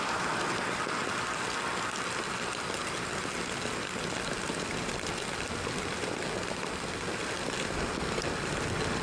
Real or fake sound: real